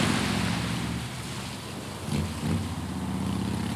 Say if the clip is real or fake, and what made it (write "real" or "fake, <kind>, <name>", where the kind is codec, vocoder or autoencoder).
real